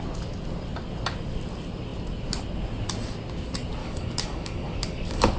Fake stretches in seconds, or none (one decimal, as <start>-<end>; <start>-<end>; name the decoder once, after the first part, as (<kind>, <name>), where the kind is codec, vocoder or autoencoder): 3.8-5.4 (codec, DAC)